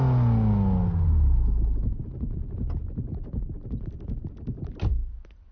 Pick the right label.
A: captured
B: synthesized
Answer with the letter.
A